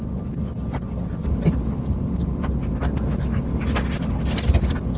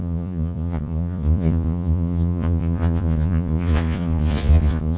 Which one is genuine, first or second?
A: first